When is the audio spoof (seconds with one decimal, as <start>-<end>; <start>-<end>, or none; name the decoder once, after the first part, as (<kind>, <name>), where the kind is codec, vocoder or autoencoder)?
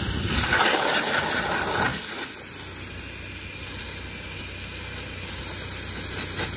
none